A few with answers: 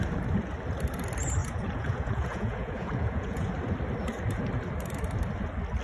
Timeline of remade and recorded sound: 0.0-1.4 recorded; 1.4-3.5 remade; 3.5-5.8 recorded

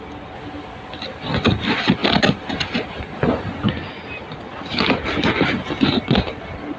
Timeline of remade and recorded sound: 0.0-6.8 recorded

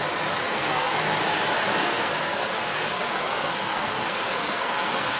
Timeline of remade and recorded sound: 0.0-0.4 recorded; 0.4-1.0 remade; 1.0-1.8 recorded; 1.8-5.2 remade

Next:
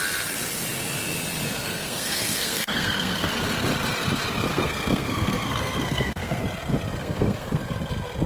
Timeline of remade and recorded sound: 0.0-1.6 recorded; 1.6-3.3 remade; 3.3-4.5 recorded; 4.5-6.4 remade; 6.4-7.0 recorded; 7.0-7.6 remade; 7.6-8.3 recorded

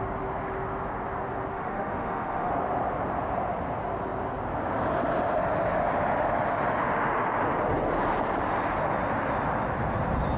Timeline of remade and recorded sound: 0.0-1.5 recorded; 1.5-2.5 remade; 2.5-10.4 recorded

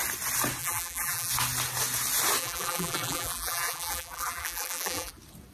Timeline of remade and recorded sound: 0.0-0.6 recorded; 0.6-1.3 remade; 1.3-2.4 recorded; 2.4-5.1 remade; 5.1-5.5 recorded

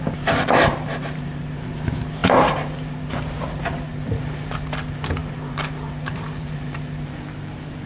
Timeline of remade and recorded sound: 0.0-7.9 remade